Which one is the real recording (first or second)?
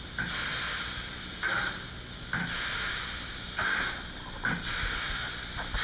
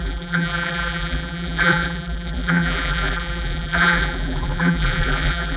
first